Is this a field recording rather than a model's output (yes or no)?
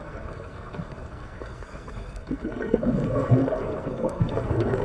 no